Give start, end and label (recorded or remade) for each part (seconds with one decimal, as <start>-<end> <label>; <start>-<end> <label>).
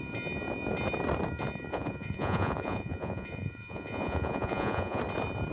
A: 0.0-1.7 recorded; 1.7-5.0 remade; 5.0-5.5 recorded